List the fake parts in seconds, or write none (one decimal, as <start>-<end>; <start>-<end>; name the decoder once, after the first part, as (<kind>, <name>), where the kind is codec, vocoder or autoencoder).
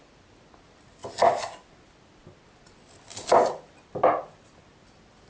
none